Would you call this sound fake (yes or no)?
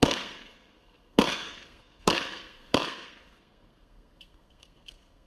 yes